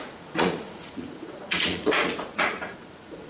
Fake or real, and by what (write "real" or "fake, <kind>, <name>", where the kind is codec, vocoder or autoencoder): fake, vocoder, Vocos